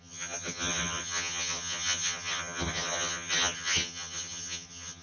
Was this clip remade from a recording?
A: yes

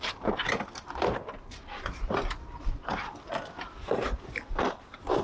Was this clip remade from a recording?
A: no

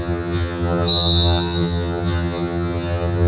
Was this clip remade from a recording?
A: yes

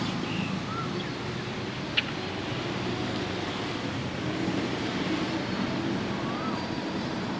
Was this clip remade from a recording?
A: no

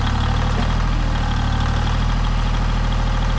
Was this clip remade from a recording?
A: no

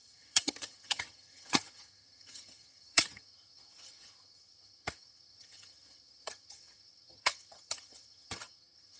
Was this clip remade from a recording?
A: yes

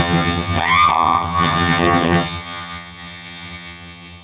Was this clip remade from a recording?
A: yes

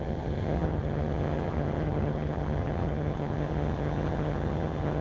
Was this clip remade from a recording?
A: yes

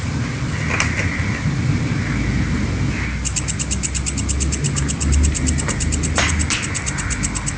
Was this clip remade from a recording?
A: no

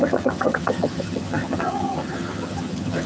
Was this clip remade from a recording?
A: yes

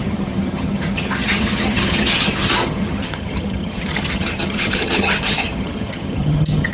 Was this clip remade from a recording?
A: yes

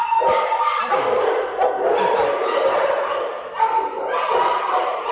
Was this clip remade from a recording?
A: no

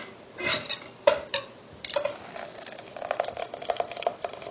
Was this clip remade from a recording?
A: no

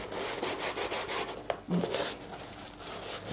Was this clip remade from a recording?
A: no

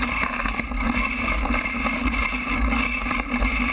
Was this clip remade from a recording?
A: no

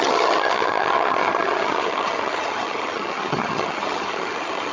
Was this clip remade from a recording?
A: yes